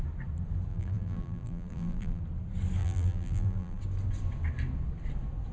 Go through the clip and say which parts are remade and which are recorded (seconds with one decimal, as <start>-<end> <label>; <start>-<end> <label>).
0.0-0.7 recorded; 0.7-2.2 remade; 2.2-2.8 recorded; 2.8-3.8 remade; 3.8-5.5 recorded